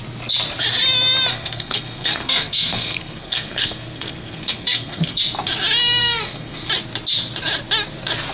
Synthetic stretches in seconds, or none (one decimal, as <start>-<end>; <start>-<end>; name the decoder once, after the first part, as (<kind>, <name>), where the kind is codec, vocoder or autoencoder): 1.3-5.2 (codec, SNAC); 6.0-6.7